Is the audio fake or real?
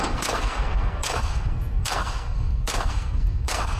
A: fake